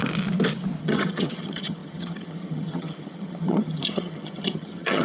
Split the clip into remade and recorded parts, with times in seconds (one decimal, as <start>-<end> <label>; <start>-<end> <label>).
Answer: 0.0-0.8 recorded; 0.8-5.0 remade